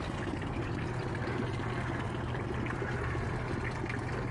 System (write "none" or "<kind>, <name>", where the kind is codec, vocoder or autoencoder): none